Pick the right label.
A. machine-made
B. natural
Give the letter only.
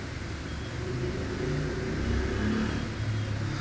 B